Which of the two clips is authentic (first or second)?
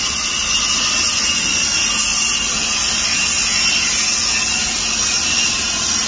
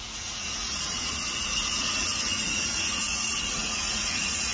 first